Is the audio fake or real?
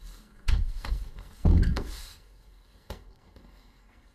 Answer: fake